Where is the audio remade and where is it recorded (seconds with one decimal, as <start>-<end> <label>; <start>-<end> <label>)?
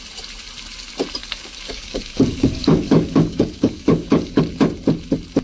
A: 0.0-1.2 recorded; 1.2-4.4 remade; 4.4-5.4 recorded